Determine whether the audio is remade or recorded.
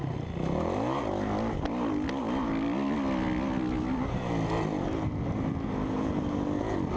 recorded